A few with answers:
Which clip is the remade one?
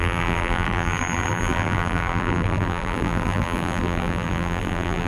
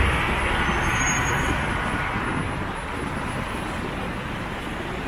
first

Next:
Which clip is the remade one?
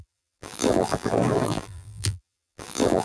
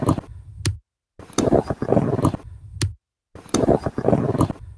first